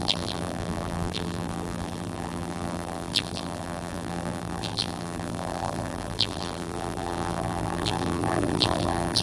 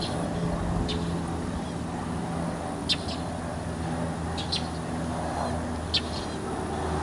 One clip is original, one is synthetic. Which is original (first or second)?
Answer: second